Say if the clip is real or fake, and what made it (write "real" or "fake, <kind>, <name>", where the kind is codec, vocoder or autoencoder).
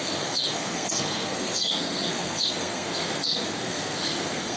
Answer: fake, codec, SNAC